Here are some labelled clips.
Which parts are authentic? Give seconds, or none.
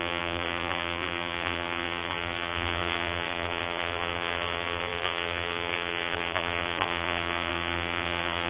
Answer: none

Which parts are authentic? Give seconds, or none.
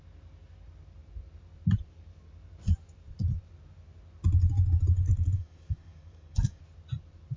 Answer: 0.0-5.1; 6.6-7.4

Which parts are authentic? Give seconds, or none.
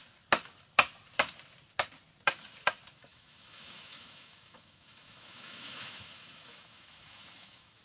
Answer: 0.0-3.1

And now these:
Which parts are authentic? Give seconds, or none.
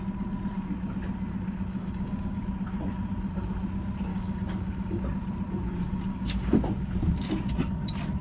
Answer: 0.0-1.7; 2.4-4.1; 5.0-6.1; 6.6-8.2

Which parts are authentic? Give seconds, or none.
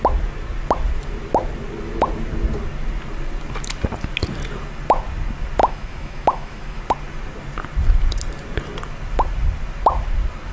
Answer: 0.0-5.6; 6.8-10.5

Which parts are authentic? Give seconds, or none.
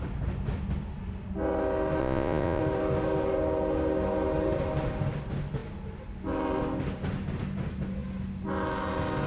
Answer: 0.0-2.0; 2.6-9.3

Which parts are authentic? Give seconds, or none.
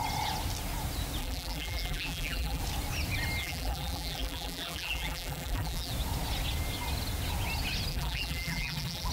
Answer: 0.0-1.2; 2.6-3.4; 5.9-7.9